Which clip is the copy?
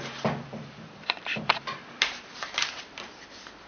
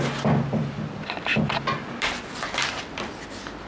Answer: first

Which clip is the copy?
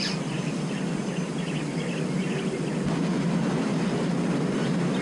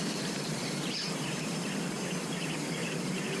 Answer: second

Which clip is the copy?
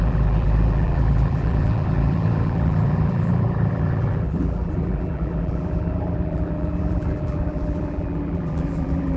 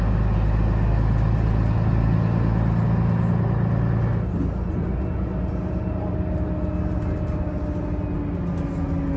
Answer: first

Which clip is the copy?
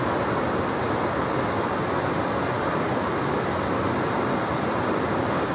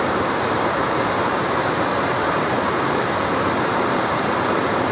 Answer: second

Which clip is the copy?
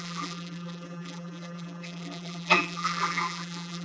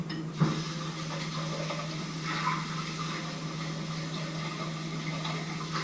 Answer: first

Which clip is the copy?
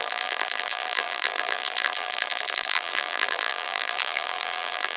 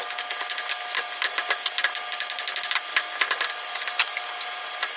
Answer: first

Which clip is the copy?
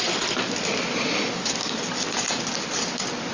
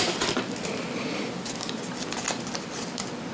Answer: second